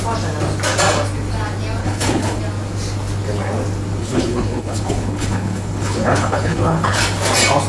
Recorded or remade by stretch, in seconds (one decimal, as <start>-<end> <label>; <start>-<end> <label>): 0.0-1.8 recorded; 1.8-2.4 remade; 2.4-4.0 recorded; 4.0-7.0 remade; 7.0-7.7 recorded